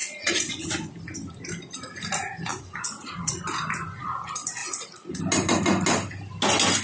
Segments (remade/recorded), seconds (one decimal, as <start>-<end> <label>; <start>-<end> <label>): 0.0-0.5 remade; 0.5-2.5 recorded; 2.5-3.4 remade; 3.4-4.6 recorded; 4.6-5.2 remade; 5.2-6.8 recorded